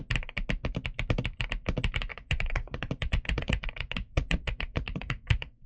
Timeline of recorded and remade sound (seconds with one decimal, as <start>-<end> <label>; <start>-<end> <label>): 0.0-2.1 recorded; 2.1-5.7 remade